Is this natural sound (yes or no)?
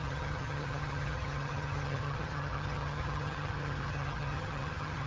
no